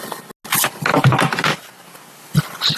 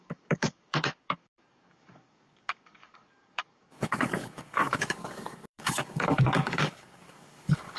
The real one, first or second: first